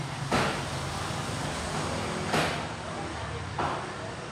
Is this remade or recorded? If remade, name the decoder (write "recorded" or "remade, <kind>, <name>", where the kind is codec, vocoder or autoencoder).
recorded